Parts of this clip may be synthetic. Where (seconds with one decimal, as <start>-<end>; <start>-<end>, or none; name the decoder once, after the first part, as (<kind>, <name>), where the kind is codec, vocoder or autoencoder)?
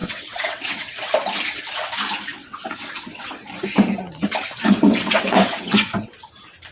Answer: 0.0-0.9 (vocoder, WaveNeXt); 2.3-3.3; 4.6-6.1